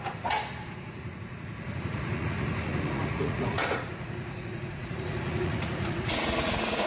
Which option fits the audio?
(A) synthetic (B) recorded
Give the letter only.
A